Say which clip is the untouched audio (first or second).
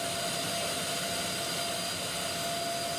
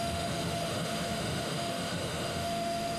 first